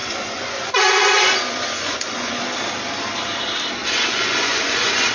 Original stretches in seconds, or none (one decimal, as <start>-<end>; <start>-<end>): 2.4-3.8